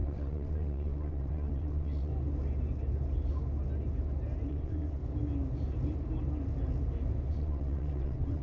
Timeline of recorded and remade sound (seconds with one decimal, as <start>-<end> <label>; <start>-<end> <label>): 0.0-2.1 remade; 2.1-4.5 recorded; 4.5-5.0 remade; 5.0-7.3 recorded; 7.3-8.4 remade